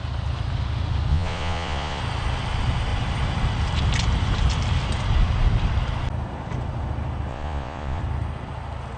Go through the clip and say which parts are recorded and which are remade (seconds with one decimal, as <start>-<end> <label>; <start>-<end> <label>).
0.0-1.1 recorded; 1.1-2.0 remade; 2.0-7.3 recorded; 7.3-8.0 remade; 8.0-9.0 recorded